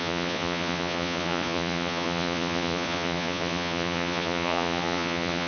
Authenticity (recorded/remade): remade